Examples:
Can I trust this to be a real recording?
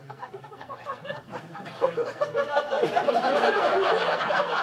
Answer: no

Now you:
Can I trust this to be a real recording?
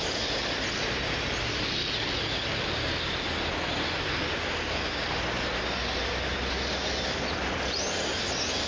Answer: yes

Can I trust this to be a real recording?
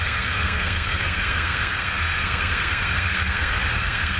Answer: no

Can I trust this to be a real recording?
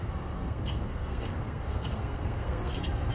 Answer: no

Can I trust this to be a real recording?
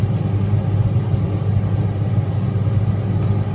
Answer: yes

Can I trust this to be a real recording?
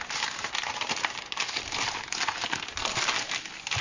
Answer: yes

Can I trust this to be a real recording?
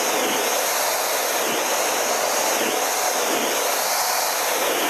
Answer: yes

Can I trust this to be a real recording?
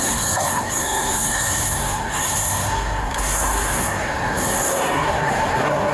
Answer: no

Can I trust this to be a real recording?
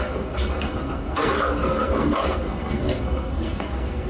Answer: no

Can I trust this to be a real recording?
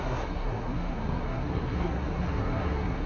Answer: no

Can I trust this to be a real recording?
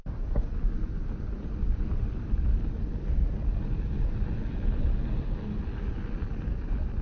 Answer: yes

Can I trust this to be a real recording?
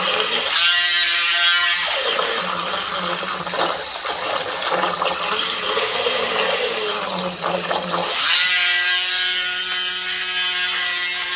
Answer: yes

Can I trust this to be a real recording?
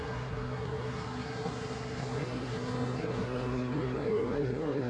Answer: no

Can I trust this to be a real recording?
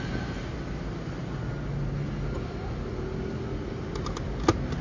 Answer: yes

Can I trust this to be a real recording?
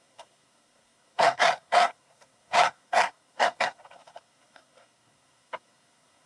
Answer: no